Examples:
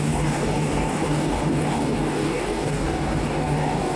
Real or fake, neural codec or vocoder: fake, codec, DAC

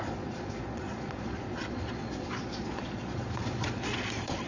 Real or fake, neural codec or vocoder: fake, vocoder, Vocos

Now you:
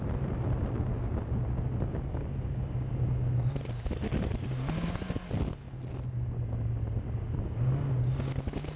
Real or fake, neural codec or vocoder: real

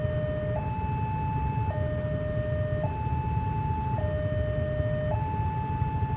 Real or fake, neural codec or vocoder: real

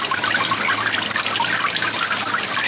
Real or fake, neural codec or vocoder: real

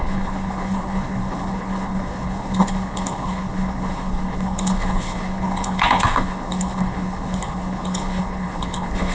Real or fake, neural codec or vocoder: fake, codec, HILCodec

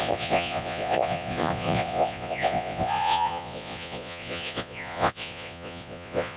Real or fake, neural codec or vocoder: fake, vocoder, Vocos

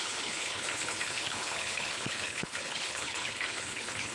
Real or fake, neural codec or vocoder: fake, codec, HILCodec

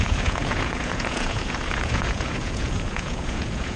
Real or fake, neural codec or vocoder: fake, vocoder, Vocos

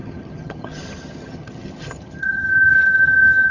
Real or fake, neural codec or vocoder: fake, vocoder, HiFi-GAN